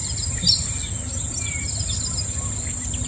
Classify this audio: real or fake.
real